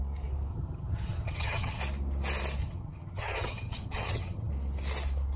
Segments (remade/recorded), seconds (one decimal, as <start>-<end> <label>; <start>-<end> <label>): 0.0-0.5 recorded; 0.5-1.8 remade; 1.8-2.6 recorded; 2.6-4.5 remade; 4.5-5.4 recorded